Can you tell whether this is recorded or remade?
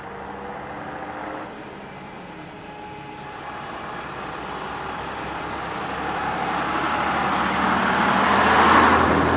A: recorded